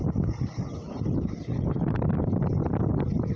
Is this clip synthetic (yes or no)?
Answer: no